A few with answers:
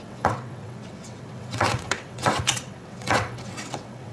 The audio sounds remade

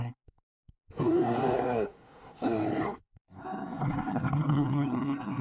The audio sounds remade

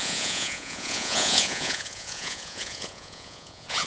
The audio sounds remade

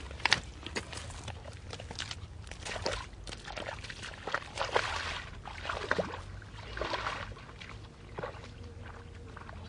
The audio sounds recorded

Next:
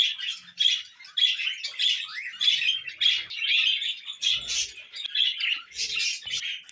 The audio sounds recorded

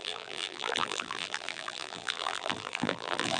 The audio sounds remade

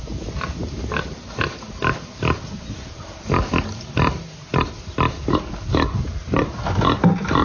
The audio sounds recorded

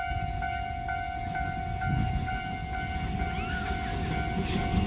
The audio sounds recorded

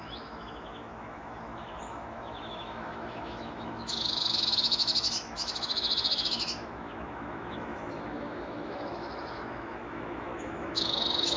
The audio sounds remade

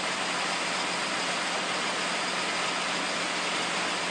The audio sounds recorded